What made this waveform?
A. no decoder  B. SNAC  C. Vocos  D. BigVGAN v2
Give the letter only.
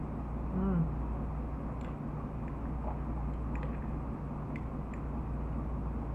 A